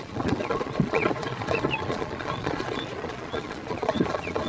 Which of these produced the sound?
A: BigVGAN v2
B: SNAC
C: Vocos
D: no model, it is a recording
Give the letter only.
C